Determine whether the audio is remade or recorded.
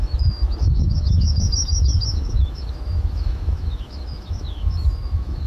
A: remade